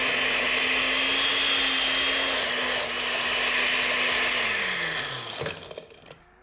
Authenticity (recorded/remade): recorded